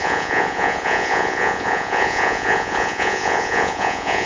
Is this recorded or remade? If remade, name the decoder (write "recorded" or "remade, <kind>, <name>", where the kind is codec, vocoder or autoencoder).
remade, vocoder, Vocos